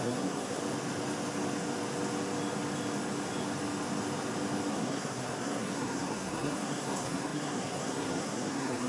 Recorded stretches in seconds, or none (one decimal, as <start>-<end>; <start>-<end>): 0.6-4.7